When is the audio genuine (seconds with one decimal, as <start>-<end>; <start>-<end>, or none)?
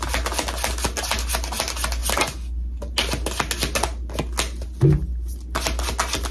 0.0-6.3